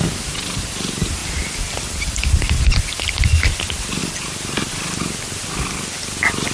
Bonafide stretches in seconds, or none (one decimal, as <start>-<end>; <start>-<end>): 0.0-1.2; 2.9-4.0; 4.7-6.5